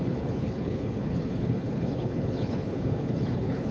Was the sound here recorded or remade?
remade